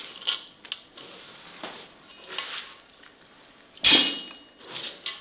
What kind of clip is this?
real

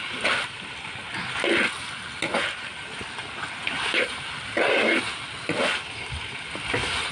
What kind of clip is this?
real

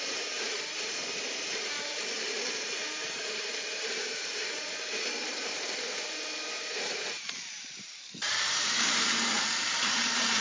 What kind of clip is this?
fake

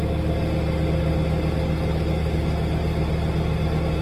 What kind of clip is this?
real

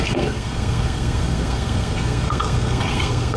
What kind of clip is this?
fake